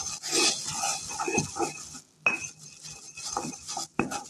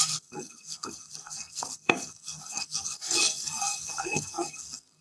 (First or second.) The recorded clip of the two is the first